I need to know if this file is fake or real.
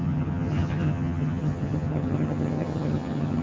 fake